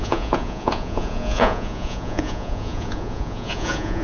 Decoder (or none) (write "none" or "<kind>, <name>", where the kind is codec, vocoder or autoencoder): vocoder, Vocos